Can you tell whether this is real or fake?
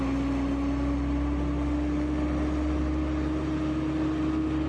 real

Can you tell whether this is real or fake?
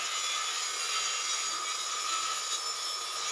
real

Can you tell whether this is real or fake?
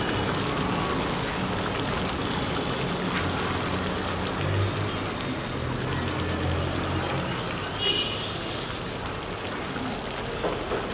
real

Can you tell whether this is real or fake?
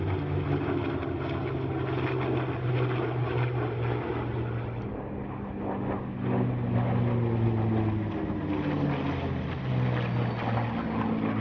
real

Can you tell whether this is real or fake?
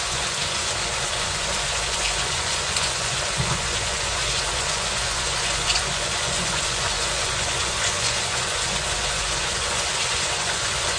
fake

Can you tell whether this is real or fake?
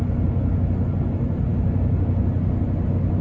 real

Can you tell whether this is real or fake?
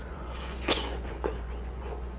fake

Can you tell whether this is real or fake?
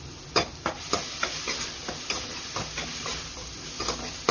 real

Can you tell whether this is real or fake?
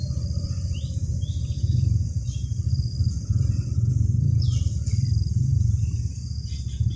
real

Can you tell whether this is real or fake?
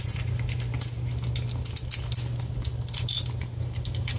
real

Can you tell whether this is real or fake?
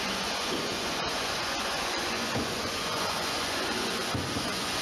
fake